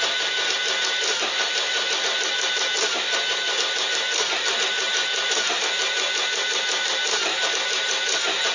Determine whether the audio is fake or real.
real